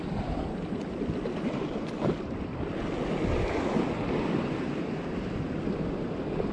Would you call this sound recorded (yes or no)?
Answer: yes